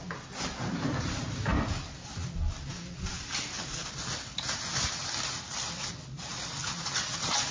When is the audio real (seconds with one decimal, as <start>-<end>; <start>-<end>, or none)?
0.0-7.5